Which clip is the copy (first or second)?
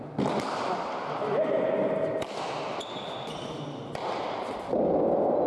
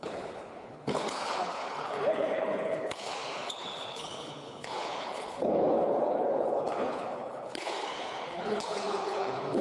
second